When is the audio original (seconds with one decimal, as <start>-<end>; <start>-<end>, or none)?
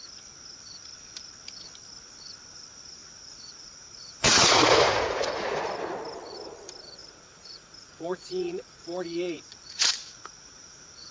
0.0-3.0; 5.6-7.0